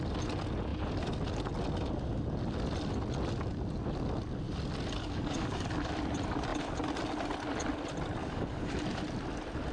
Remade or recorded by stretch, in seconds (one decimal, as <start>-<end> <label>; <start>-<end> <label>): 0.0-5.0 recorded; 5.0-5.9 remade; 5.9-8.2 recorded; 8.2-8.8 remade; 8.8-9.7 recorded